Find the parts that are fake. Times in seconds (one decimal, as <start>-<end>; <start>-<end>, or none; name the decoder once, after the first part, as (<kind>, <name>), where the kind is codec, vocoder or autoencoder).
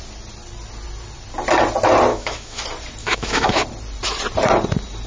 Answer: 2.1-2.6 (autoencoder, DAC-VAE); 3.0-3.6